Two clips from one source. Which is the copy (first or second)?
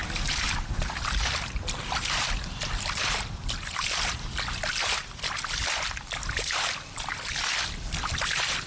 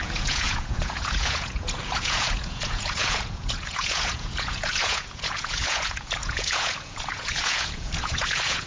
second